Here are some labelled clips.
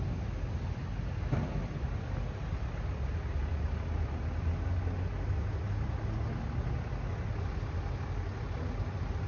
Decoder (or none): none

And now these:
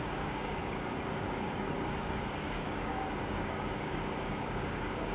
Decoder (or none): codec, DAC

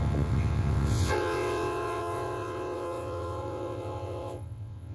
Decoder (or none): vocoder, WaveNeXt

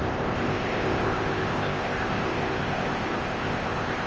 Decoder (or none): codec, ZipCodec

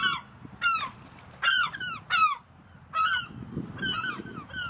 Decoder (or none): none